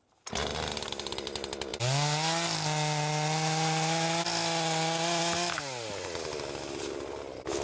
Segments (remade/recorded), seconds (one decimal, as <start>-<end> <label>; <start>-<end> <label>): 0.0-7.6 recorded